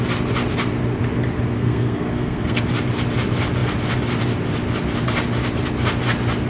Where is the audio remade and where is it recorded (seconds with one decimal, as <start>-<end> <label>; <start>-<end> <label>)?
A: 0.0-1.6 recorded; 1.6-2.6 remade; 2.6-6.5 recorded